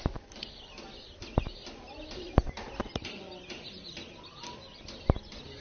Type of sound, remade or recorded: recorded